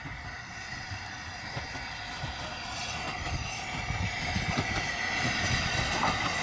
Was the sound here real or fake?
real